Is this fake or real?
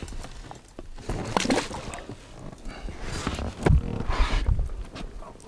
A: real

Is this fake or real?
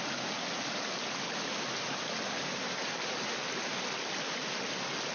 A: real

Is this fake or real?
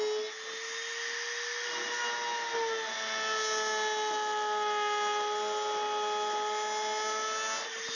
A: real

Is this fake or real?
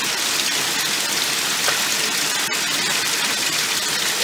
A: real